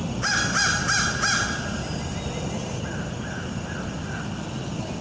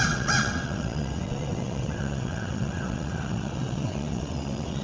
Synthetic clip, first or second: second